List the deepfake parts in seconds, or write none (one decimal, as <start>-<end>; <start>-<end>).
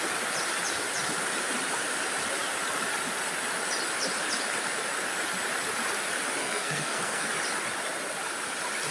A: 6.4-7.3